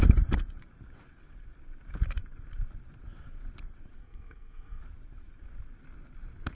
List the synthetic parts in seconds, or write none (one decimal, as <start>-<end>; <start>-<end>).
4.0-4.8